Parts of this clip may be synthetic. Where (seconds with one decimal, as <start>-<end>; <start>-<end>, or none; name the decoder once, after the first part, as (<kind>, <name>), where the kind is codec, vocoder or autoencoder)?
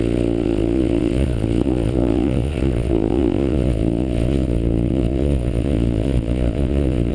0.0-7.1 (vocoder, Vocos)